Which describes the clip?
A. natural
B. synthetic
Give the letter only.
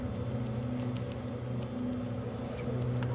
A